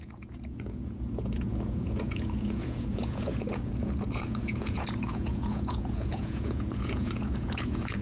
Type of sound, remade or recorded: remade